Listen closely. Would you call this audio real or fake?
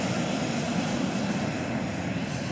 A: real